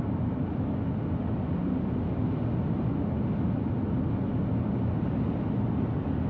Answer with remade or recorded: recorded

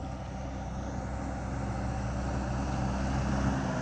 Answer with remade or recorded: recorded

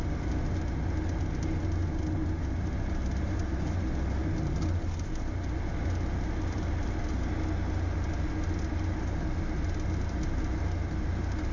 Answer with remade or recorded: recorded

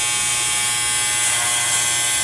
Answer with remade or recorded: recorded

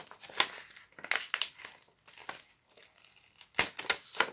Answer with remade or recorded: recorded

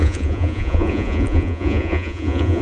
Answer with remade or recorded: remade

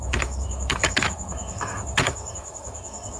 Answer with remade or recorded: remade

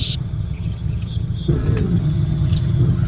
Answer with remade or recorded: remade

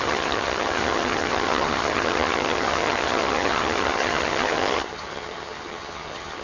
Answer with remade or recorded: remade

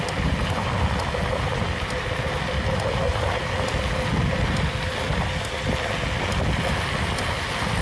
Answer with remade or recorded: recorded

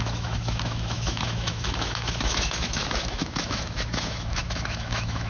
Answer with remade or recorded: remade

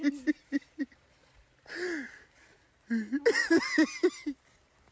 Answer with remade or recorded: recorded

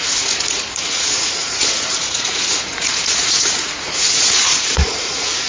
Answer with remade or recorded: remade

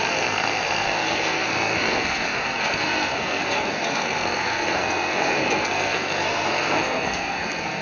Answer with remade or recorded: remade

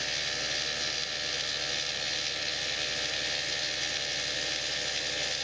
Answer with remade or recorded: recorded